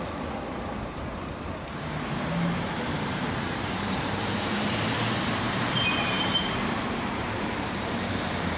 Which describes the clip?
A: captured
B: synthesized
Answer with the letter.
B